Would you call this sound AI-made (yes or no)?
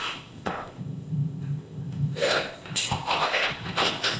yes